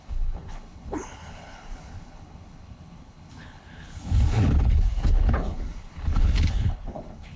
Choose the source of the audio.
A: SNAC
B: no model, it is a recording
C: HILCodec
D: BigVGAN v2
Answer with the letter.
C